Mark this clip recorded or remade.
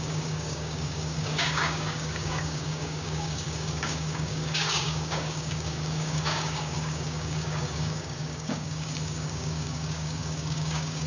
remade